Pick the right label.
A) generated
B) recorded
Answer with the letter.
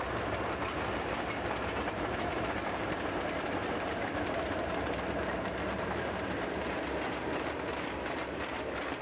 A